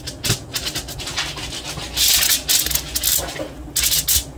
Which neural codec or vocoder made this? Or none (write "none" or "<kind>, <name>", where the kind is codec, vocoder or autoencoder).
none